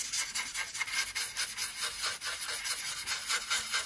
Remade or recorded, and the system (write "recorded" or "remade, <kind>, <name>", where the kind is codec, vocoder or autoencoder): recorded